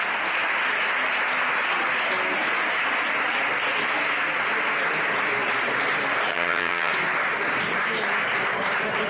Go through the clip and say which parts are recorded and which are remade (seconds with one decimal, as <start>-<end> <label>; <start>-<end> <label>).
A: 0.0-6.3 recorded; 6.3-6.9 remade; 6.9-9.1 recorded